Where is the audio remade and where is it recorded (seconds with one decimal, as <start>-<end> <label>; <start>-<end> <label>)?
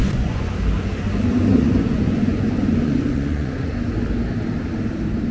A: 0.0-0.5 remade; 0.5-1.5 recorded; 1.5-3.7 remade; 3.7-5.3 recorded